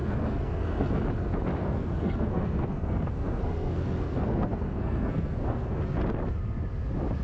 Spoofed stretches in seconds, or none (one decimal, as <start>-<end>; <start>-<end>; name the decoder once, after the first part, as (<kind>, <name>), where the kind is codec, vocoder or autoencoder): 0.0-1.0 (codec, SNAC); 1.6-5.8